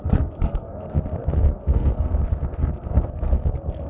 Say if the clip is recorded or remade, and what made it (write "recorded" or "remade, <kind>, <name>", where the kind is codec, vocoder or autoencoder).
remade, codec, SNAC